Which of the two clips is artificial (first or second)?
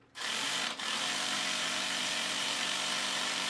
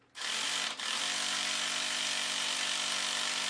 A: first